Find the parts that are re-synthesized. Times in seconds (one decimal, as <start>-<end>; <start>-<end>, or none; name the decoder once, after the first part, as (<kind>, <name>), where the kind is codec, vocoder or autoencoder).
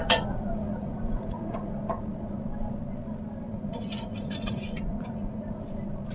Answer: 0.0-2.0 (vocoder, Vocos); 3.5-5.6